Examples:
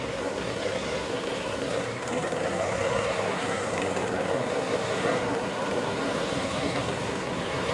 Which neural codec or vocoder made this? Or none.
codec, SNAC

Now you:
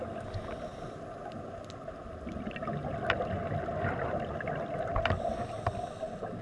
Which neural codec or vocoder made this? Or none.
none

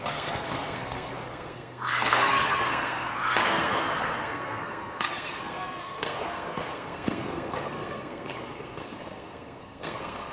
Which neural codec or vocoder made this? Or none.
codec, SNAC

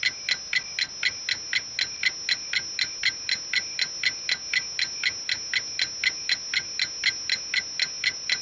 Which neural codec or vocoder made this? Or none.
none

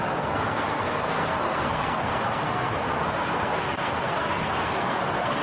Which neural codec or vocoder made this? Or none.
codec, SNAC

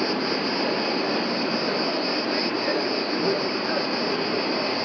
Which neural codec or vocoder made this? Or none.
none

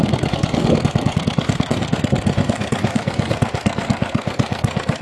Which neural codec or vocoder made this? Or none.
codec, SNAC